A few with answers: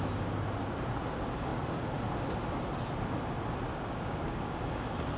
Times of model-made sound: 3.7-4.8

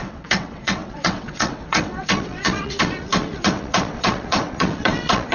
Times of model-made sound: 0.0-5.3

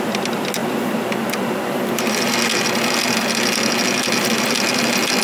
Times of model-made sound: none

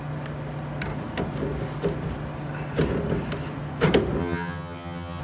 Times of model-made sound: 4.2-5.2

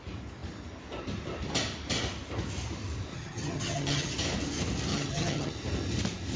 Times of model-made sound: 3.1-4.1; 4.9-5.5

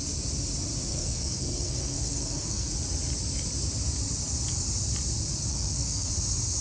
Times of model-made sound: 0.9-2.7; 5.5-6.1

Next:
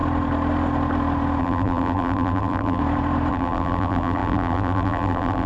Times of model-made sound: 1.4-2.8; 3.3-5.5

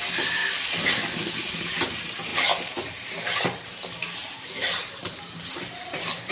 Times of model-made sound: 0.0-0.4; 1.5-6.3